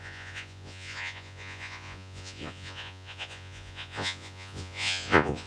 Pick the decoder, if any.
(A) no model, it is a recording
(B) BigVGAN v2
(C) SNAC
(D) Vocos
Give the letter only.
D